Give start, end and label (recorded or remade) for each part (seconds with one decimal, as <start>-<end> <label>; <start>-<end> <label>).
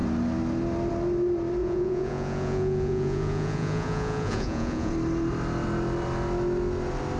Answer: 0.0-1.6 recorded; 1.6-4.9 remade; 4.9-7.2 recorded